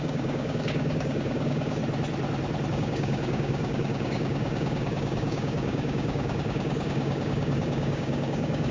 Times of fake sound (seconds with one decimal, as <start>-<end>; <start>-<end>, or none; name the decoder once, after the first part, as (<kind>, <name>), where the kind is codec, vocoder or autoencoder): 0.0-1.8 (codec, DAC); 2.7-8.7

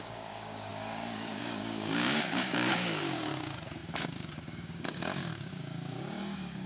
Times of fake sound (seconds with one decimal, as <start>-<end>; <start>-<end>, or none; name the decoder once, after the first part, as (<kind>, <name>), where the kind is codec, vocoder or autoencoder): 0.0-6.7 (codec, DAC)

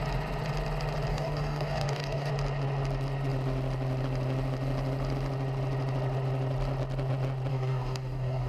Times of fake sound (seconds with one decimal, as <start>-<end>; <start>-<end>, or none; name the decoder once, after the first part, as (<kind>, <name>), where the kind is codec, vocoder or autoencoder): 1.1-2.3 (codec, DAC); 7.5-8.5

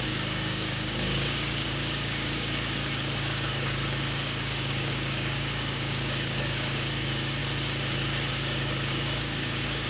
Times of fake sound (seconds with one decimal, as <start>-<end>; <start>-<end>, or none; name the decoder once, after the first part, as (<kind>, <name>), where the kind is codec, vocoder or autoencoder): 0.0-7.4 (codec, DAC); 8.3-9.9

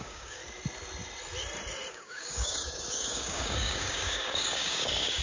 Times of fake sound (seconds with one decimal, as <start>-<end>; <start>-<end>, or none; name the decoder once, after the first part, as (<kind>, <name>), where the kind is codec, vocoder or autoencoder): 0.0-0.4 (codec, DAC); 1.9-5.2

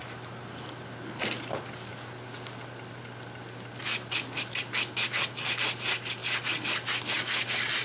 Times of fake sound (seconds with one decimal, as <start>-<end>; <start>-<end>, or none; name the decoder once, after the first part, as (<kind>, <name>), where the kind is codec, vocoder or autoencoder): none

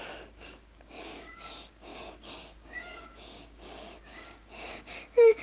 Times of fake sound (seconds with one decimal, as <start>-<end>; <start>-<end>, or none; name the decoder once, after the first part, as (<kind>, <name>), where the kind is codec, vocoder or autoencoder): 0.0-5.4 (codec, DAC)

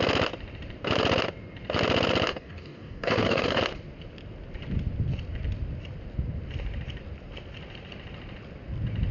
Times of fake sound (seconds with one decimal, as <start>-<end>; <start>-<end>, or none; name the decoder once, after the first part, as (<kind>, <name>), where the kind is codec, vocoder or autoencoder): 2.3-3.6 (codec, DAC)